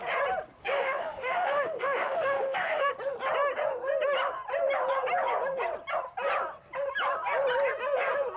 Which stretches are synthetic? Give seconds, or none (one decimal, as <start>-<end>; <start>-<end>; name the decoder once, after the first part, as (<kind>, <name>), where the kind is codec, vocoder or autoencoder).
0.6-2.9 (autoencoder, DAC-VAE)